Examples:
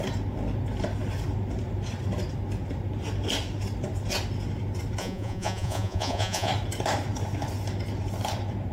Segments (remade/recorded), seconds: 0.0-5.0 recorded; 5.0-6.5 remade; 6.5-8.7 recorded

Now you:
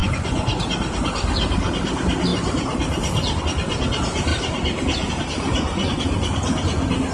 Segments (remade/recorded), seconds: 0.0-0.6 remade; 0.6-5.5 recorded; 5.5-6.0 remade; 6.0-7.1 recorded

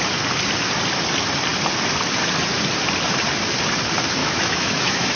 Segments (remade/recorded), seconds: 0.0-4.2 recorded; 4.2-5.2 remade

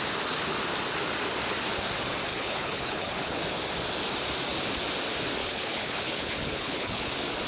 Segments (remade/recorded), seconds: 0.0-2.3 recorded; 2.3-3.4 remade; 3.4-5.4 recorded; 5.4-7.1 remade; 7.1-7.5 recorded

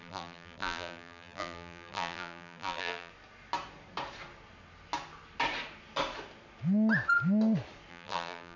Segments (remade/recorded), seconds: 0.0-3.1 remade; 3.1-7.9 recorded; 7.9-8.6 remade

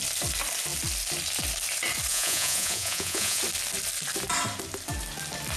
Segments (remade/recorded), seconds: 0.0-2.1 recorded; 2.1-3.4 remade; 3.4-5.6 recorded

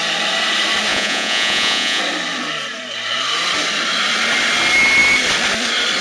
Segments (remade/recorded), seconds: 0.0-0.9 recorded; 0.9-2.0 remade; 2.0-6.0 recorded

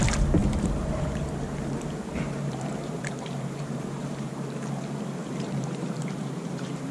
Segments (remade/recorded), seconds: 0.0-0.4 recorded; 0.4-4.3 remade; 4.3-5.2 recorded; 5.2-6.9 remade